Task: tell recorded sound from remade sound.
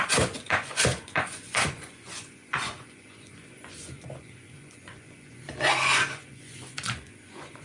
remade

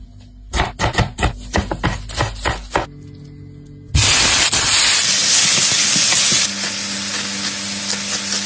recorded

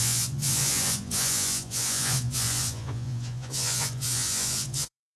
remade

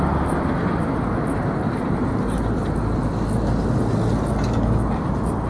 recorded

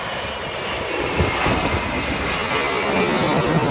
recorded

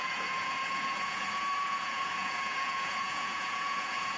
remade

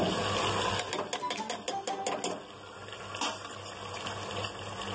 recorded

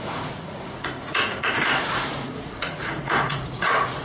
remade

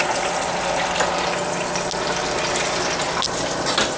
recorded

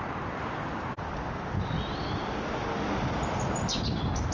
recorded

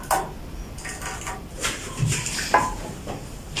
recorded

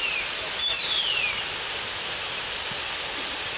recorded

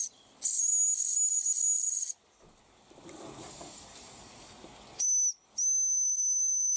recorded